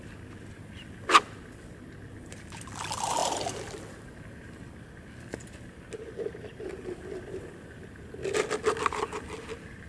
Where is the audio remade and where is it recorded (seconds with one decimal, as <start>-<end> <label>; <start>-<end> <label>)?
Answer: 0.0-9.9 recorded